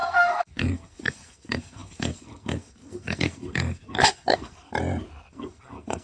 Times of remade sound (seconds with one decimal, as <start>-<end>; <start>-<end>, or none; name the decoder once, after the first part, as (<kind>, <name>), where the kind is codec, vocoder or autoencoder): 0.0-4.7 (codec, SNAC); 5.3-6.0